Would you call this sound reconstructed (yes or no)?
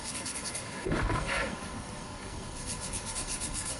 yes